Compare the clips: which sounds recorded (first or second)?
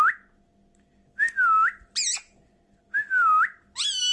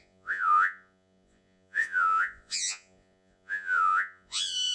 first